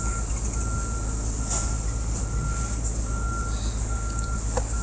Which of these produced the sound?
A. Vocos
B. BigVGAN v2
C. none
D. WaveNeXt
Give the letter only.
C